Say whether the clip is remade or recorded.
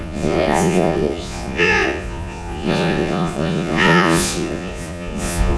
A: remade